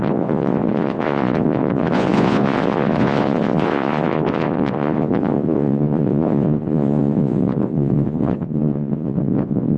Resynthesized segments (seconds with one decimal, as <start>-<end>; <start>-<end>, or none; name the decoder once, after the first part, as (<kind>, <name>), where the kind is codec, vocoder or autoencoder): 0.0-9.8 (vocoder, Vocos)